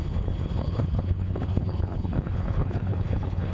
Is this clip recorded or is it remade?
remade